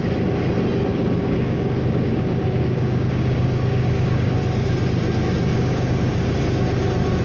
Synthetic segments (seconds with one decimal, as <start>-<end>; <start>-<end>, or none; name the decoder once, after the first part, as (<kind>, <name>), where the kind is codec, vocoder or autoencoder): 0.9-4.4 (codec, DAC); 5.5-6.4